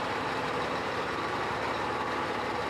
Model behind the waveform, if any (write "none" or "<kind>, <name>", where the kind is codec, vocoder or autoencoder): vocoder, BigVGAN v2